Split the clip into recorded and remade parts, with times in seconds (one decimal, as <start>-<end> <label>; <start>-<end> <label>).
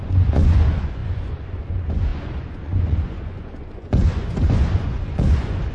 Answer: 0.0-5.7 remade